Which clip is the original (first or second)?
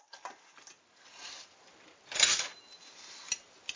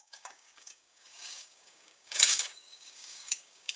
first